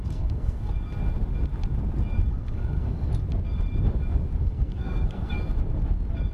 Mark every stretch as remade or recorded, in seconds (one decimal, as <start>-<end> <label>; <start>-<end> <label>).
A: 0.0-0.7 remade; 0.7-2.3 recorded; 2.3-3.1 remade; 3.1-4.4 recorded; 4.4-5.4 remade; 5.4-6.3 recorded